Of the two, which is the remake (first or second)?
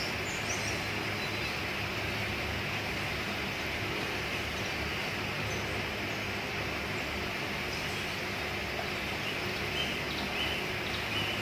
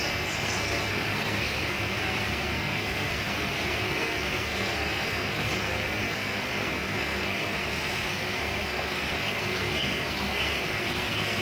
second